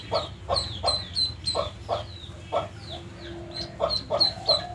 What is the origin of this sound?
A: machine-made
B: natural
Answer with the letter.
B